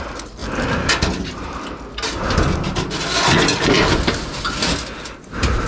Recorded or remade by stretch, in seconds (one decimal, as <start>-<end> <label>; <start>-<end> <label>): 0.0-5.7 recorded